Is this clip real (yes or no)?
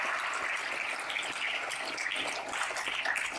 yes